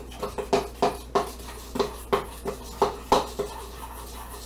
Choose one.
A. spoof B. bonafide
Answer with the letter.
B